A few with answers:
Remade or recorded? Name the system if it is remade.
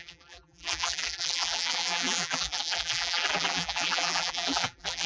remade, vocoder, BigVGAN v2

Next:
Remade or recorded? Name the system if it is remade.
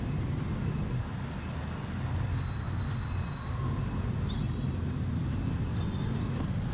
recorded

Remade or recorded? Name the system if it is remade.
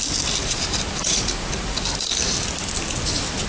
recorded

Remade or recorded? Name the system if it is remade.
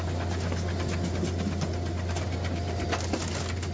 recorded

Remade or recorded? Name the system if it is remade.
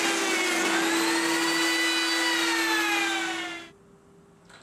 recorded